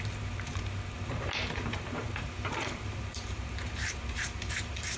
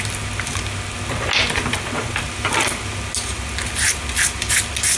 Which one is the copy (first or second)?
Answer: first